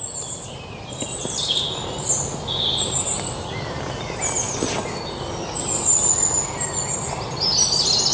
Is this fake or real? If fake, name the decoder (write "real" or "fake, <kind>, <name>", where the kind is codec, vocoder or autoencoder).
real